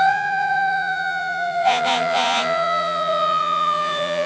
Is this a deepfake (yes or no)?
yes